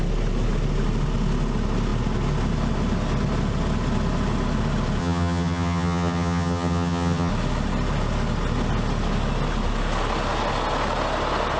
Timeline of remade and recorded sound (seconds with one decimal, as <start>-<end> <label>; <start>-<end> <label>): 0.0-5.0 recorded; 5.0-7.3 remade; 7.3-11.6 recorded